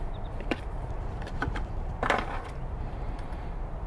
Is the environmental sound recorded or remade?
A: remade